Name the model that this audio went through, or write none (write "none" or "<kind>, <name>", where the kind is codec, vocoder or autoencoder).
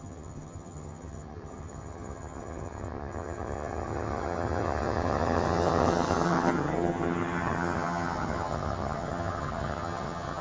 vocoder, HiFi-GAN